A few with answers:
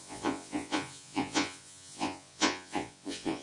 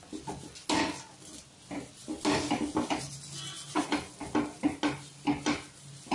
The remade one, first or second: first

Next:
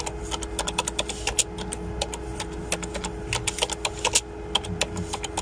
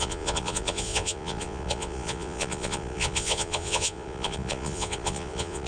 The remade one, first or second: second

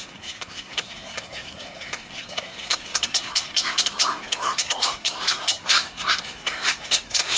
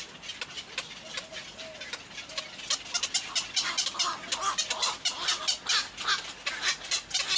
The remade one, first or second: first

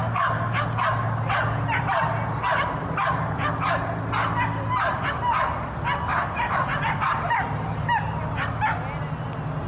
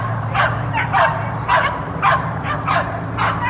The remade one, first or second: second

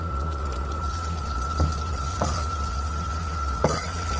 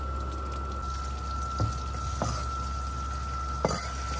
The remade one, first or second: first